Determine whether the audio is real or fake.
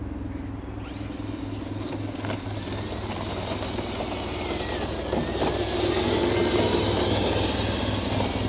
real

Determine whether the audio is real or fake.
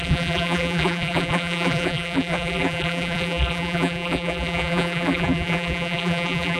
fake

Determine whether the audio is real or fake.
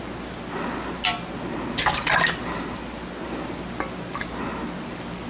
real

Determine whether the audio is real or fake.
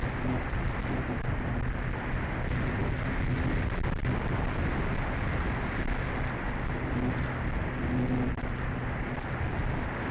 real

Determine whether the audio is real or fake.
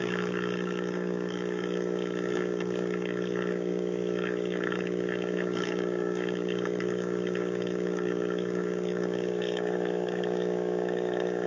fake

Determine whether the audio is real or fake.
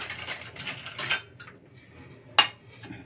real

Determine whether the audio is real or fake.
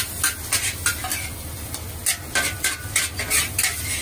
real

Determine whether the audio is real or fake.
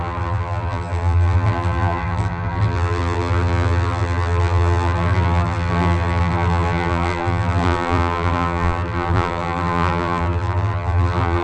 fake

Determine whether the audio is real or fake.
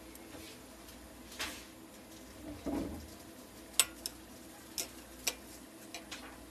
real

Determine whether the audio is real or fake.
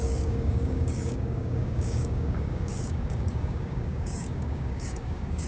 fake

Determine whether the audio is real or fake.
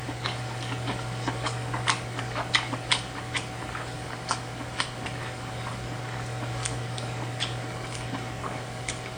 fake